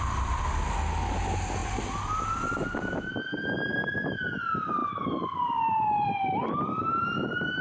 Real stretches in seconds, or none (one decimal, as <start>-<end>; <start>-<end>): 0.0-4.8